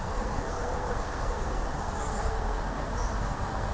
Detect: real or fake fake